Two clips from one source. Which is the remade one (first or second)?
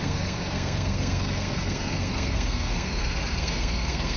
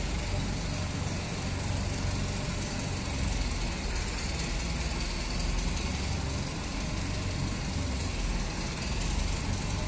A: first